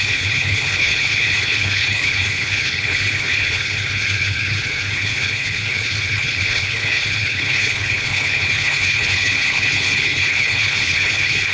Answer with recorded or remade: remade